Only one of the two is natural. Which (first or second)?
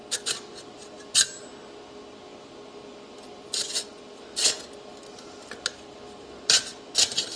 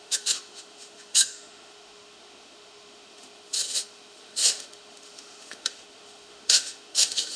first